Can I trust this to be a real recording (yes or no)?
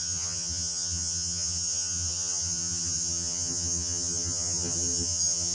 no